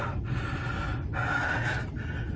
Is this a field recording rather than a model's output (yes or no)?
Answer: yes